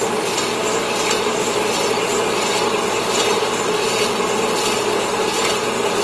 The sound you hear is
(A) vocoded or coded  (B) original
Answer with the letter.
B